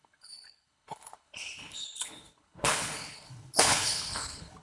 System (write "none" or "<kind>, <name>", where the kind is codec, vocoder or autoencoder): codec, HILCodec